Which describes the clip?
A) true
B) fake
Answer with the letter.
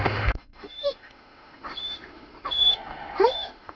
B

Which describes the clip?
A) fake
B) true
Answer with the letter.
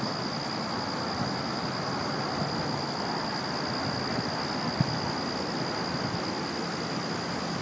B